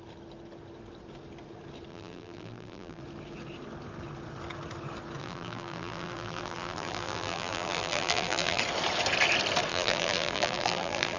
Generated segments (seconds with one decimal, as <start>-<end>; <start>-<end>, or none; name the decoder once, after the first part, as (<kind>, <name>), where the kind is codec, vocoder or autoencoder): 1.9-3.0 (vocoder, BigVGAN v2); 5.2-8.6; 9.7-11.2